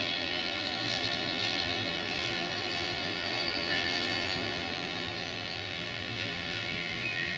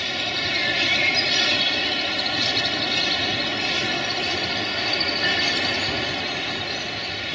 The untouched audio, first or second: second